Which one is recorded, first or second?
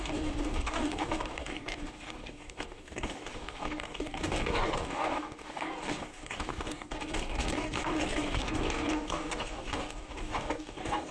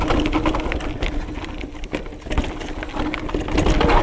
second